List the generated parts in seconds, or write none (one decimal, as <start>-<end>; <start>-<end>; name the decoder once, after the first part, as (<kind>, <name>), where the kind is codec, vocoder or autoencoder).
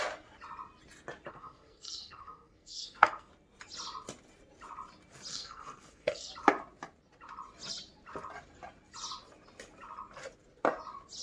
1.3-3.3 (codec, SNAC); 5.3-6.3